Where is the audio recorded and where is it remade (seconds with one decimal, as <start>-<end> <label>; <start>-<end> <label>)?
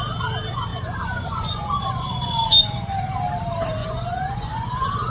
0.0-0.7 recorded; 0.7-2.5 remade; 2.5-3.8 recorded; 3.8-5.1 remade